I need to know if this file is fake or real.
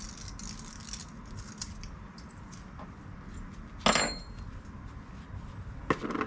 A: real